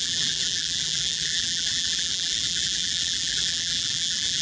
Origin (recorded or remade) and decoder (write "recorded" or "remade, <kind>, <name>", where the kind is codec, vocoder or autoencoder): remade, vocoder, BigVGAN v2